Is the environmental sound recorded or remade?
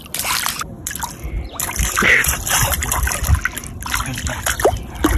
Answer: recorded